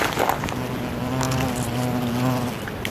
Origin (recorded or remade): recorded